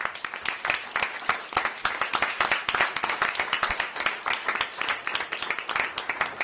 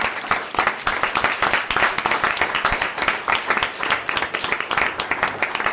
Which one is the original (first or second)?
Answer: first